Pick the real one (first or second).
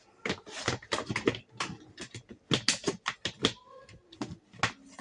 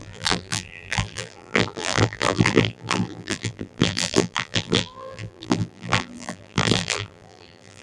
first